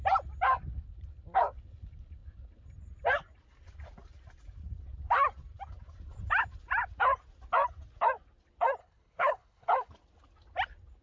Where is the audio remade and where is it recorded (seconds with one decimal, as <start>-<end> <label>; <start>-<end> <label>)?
0.0-8.8 recorded; 8.8-9.9 remade; 9.9-11.0 recorded